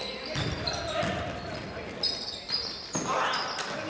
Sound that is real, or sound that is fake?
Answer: real